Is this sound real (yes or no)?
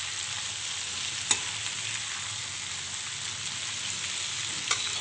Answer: yes